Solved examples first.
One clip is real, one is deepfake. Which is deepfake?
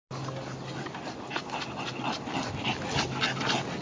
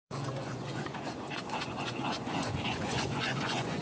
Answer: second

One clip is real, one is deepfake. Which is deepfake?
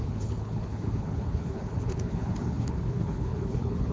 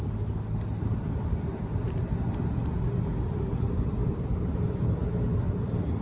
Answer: first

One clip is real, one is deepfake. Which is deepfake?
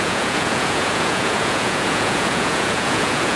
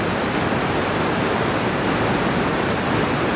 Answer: first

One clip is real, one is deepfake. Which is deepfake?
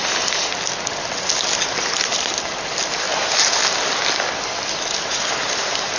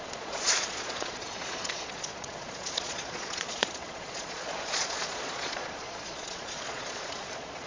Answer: second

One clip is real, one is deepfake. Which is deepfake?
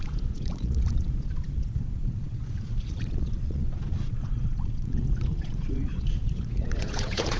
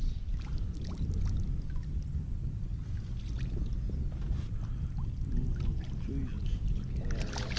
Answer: first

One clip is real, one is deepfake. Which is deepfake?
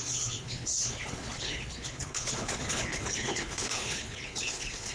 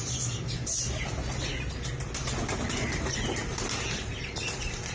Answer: first